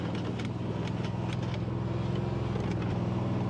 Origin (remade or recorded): recorded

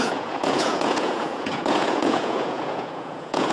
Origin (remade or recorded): remade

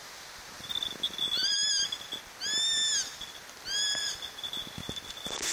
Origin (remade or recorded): recorded